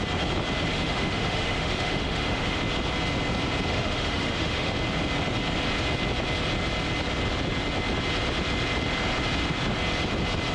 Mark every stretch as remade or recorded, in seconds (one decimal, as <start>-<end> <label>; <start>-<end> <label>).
0.0-0.7 recorded; 0.7-2.6 remade; 2.6-3.7 recorded; 3.7-4.7 remade; 4.7-10.5 recorded